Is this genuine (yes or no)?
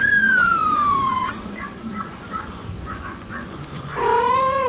no